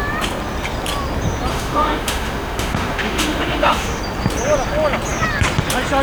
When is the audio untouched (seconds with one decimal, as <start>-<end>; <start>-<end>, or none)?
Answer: 0.0-1.5; 4.0-6.0